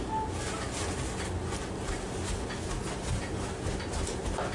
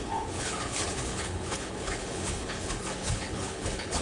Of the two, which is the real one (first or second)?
first